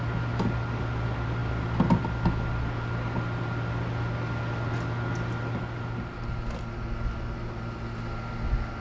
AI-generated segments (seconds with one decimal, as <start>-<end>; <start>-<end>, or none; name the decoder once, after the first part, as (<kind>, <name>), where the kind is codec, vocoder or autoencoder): none